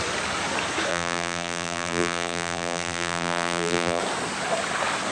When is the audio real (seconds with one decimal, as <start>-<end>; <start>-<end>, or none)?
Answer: 0.0-0.9; 4.0-5.1